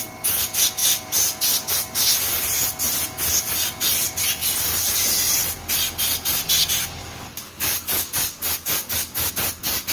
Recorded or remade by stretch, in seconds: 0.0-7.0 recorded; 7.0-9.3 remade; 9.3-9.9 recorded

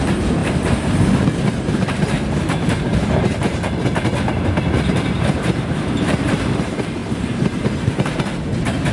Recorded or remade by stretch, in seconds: 0.0-8.9 remade

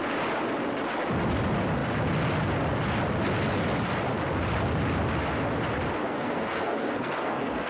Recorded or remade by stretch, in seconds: 0.0-6.0 recorded; 6.0-7.7 remade

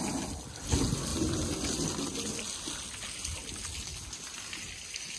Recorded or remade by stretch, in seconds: 0.0-5.2 recorded

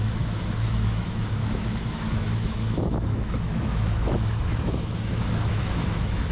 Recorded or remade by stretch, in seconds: 0.0-6.3 remade

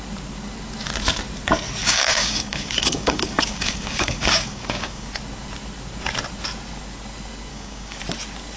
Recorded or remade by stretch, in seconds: 0.0-1.8 recorded; 1.8-5.1 remade; 5.1-7.5 recorded; 7.5-8.0 remade; 8.0-8.6 recorded

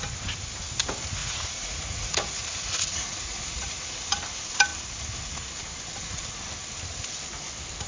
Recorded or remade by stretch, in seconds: 0.0-1.2 recorded; 1.2-4.0 remade; 4.0-7.9 recorded